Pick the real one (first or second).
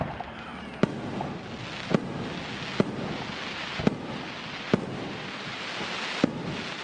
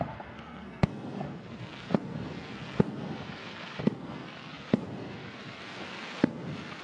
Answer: first